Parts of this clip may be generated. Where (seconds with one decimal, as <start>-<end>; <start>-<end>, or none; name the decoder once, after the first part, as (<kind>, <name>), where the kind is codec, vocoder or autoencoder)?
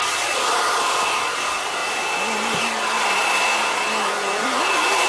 none